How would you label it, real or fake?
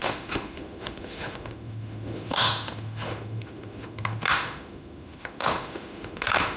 fake